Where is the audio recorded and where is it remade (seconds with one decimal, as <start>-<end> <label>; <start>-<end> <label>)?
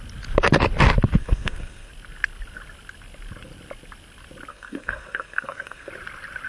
0.0-1.2 recorded; 1.2-1.9 remade; 1.9-4.5 recorded; 4.5-5.9 remade; 5.9-6.5 recorded